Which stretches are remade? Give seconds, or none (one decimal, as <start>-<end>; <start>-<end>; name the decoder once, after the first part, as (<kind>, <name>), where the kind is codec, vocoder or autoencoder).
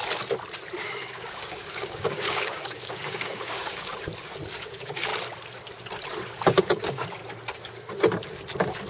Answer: 0.8-3.9 (codec, DAC); 4.6-5.1; 6.6-7.2